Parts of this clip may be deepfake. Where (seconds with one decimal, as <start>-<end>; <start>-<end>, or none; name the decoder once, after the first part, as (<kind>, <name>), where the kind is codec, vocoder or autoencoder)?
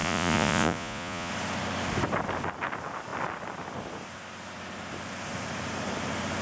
0.0-1.3 (vocoder, Vocos)